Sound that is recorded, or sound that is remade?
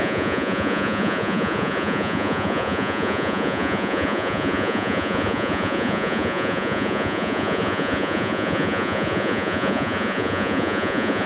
remade